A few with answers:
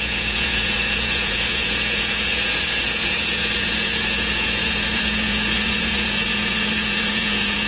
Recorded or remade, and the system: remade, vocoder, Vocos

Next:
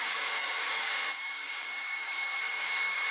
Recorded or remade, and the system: remade, codec, DAC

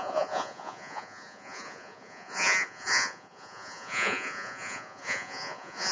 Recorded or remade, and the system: remade, vocoder, Vocos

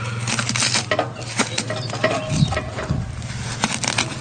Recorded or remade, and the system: recorded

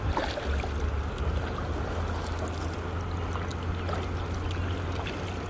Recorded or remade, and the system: recorded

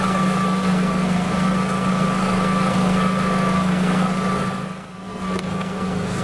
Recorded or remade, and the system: remade, codec, SNAC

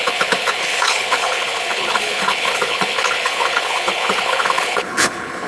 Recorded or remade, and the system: remade, codec, HILCodec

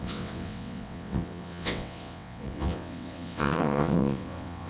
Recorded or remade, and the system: remade, vocoder, WaveNeXt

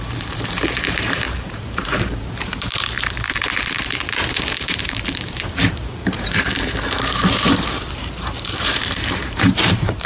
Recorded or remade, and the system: remade, vocoder, BigVGAN v2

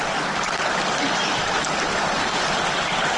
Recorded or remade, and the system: recorded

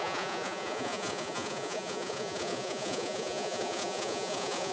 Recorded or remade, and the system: remade, vocoder, Vocos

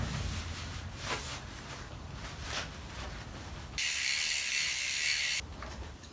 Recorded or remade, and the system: recorded